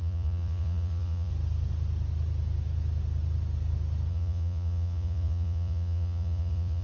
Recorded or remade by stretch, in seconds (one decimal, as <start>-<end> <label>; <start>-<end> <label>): 0.0-1.3 remade; 1.3-4.1 recorded; 4.1-6.8 remade